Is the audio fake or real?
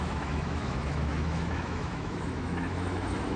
fake